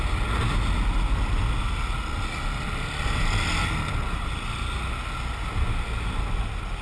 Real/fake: real